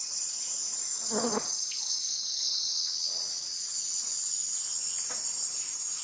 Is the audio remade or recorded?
recorded